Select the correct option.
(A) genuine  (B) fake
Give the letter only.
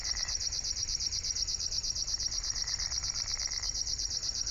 B